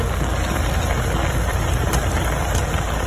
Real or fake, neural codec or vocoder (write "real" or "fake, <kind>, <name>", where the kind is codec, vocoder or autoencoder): real